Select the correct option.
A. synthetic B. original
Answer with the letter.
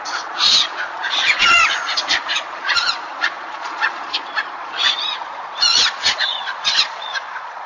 A